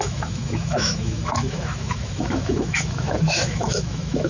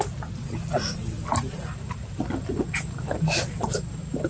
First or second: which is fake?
first